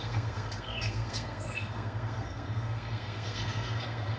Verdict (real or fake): fake